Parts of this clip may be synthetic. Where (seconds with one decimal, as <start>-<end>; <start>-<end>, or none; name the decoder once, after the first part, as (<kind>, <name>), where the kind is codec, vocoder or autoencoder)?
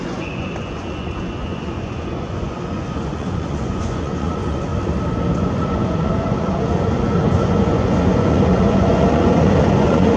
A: 0.0-4.7 (vocoder, Vocos); 5.4-10.2